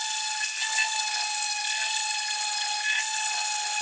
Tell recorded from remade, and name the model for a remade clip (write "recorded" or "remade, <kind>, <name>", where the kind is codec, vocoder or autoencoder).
recorded